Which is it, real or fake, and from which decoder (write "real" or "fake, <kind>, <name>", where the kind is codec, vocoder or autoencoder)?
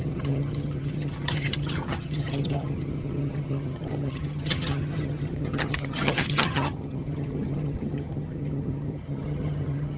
fake, vocoder, HiFi-GAN